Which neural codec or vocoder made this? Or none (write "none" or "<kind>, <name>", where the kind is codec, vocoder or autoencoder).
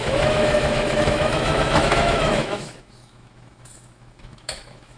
autoencoder, DAC-VAE